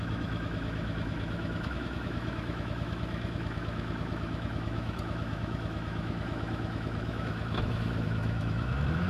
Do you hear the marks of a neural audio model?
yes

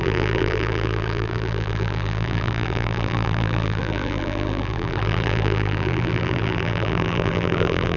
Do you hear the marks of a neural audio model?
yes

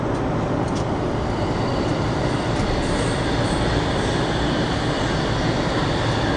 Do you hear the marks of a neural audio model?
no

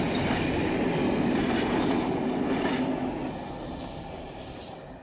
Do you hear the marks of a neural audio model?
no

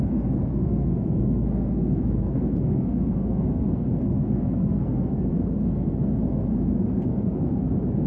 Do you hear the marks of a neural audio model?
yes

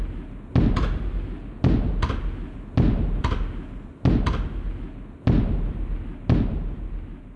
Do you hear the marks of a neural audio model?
no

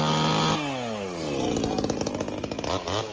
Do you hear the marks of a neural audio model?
no